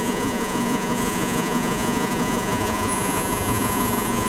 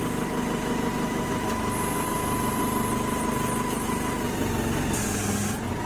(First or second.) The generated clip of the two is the first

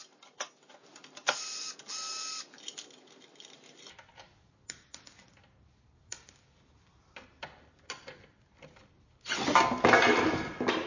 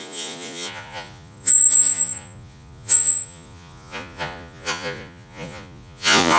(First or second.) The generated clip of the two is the second